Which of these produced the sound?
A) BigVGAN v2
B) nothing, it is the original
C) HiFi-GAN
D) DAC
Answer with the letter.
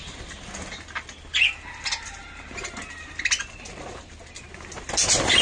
B